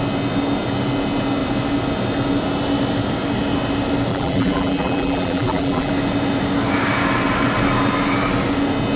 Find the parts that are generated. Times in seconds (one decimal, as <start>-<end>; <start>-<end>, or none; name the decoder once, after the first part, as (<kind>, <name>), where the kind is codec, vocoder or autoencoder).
4.1-5.9 (vocoder, BigVGAN v2)